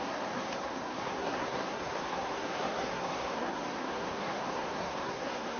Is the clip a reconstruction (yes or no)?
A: yes